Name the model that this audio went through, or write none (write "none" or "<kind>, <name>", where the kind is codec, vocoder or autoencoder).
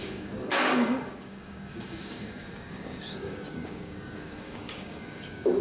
codec, DAC